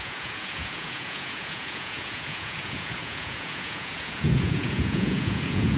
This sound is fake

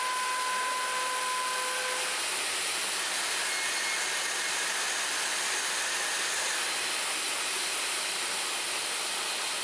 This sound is real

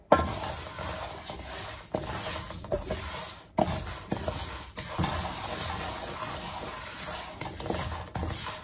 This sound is real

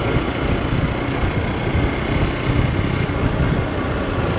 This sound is real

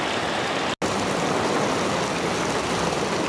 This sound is real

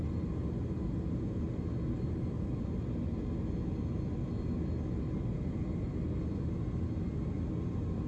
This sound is real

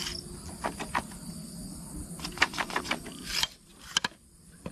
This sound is real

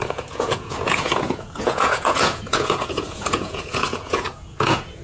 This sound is fake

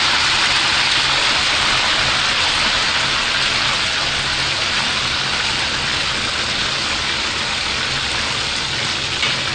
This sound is real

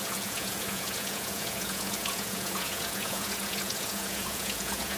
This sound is fake